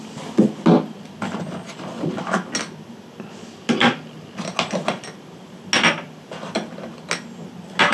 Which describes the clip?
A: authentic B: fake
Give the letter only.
A